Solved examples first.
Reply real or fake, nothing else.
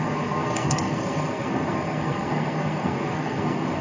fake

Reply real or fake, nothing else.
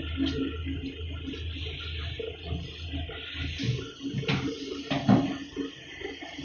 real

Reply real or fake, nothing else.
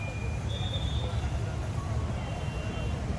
fake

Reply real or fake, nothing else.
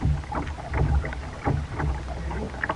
real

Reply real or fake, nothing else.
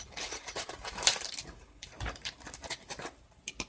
fake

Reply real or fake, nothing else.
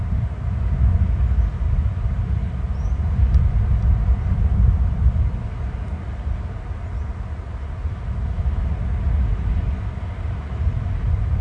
real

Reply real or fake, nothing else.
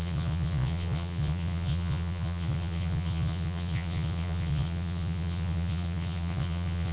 fake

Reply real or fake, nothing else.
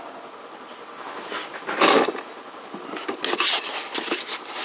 real